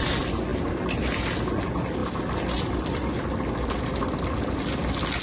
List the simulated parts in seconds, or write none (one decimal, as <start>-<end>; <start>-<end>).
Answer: none